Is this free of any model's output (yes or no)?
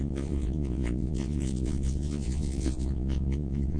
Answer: no